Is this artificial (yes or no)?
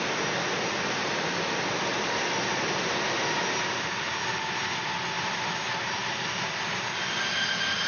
no